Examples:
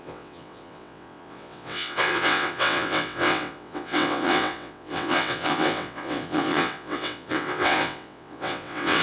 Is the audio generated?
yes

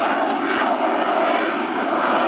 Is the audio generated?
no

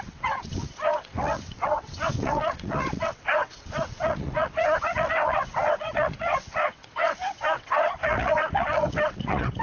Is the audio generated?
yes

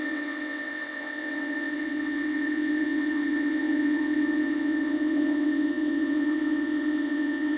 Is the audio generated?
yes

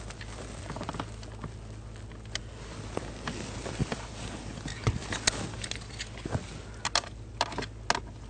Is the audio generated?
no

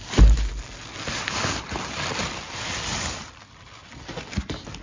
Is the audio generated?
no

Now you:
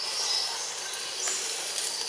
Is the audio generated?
no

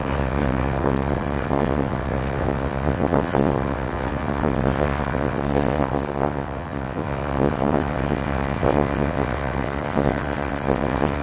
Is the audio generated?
yes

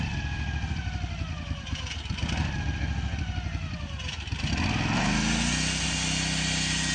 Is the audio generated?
no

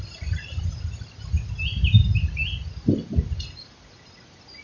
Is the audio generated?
no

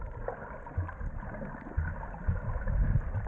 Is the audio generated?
no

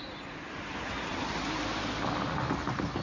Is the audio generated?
no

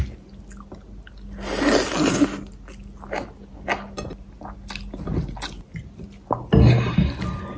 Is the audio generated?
no